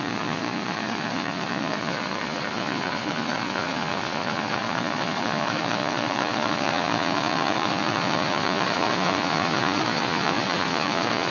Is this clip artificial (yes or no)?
yes